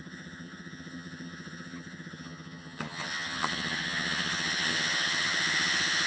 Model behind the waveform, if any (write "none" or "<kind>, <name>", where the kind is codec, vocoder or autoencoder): vocoder, HiFi-GAN